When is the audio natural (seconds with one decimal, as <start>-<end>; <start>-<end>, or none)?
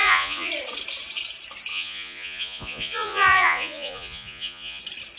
0.5-1.7; 4.8-5.2